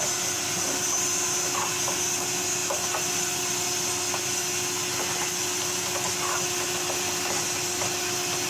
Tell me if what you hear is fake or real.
real